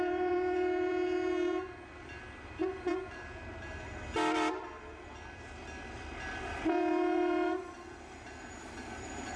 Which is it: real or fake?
fake